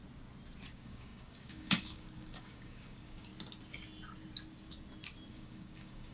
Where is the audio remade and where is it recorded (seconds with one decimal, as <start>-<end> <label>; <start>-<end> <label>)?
0.0-0.7 recorded; 0.7-3.3 remade; 3.3-5.3 recorded; 5.3-6.1 remade